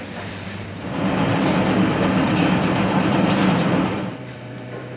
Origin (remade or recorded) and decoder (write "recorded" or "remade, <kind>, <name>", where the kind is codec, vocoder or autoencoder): remade, vocoder, BigVGAN v2